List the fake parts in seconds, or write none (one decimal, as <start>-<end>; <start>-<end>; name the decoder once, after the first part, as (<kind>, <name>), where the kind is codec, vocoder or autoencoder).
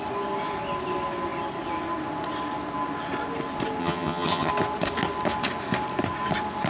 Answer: 3.8-4.5 (vocoder, HiFi-GAN)